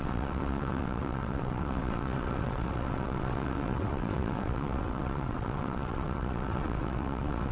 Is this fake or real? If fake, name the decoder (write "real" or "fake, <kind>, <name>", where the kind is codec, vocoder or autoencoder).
fake, vocoder, WaveNeXt